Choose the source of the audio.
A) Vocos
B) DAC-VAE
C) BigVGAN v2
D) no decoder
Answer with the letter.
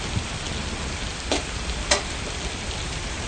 D